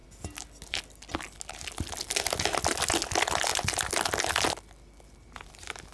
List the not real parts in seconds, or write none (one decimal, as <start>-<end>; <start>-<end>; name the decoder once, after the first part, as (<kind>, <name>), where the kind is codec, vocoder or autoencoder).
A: none